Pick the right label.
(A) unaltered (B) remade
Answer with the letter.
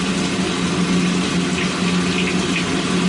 A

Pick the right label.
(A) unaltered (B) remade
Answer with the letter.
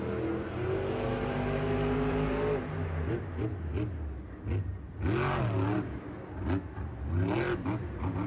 A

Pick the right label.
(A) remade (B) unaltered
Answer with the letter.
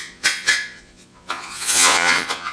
A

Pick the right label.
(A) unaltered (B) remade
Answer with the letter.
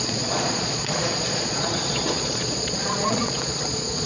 B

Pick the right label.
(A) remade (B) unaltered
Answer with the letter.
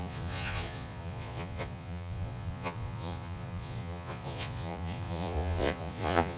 A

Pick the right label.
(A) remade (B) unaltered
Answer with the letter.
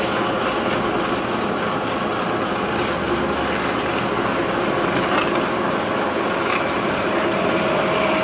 B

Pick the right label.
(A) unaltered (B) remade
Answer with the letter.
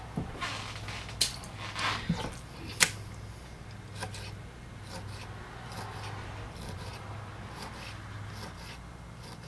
A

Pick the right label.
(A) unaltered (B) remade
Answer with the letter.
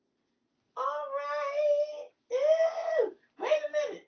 A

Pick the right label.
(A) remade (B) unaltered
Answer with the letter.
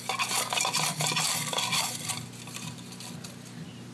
B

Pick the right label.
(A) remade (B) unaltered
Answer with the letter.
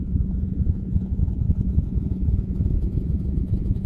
A